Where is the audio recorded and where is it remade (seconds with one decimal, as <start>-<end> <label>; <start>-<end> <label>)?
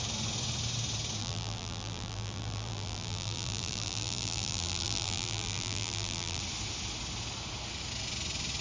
0.0-1.2 recorded; 1.2-6.4 remade; 6.4-8.6 recorded